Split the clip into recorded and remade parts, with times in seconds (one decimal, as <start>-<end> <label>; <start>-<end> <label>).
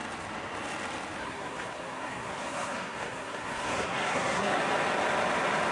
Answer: 0.0-1.2 recorded; 1.2-4.6 remade; 4.6-5.7 recorded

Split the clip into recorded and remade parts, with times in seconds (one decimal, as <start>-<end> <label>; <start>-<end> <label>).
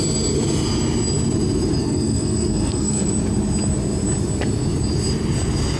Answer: 0.0-1.8 recorded; 1.8-3.1 remade; 3.1-5.8 recorded